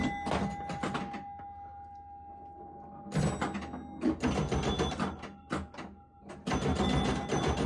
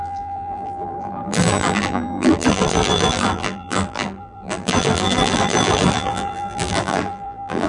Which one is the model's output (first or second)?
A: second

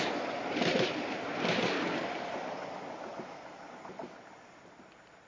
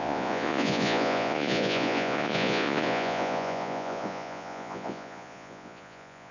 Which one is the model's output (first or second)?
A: second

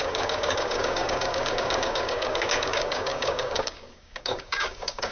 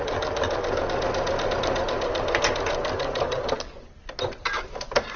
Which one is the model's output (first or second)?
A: first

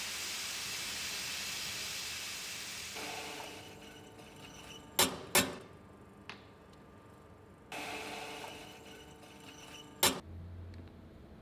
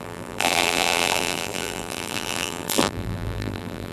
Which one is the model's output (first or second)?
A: second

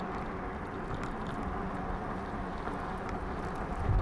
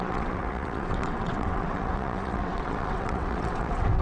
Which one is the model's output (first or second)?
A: second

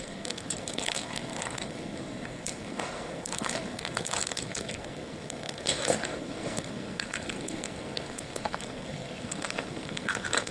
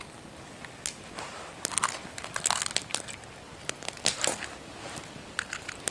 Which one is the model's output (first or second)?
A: first